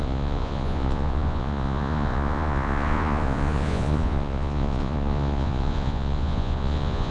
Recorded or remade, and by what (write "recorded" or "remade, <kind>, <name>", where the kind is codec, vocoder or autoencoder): remade, vocoder, Vocos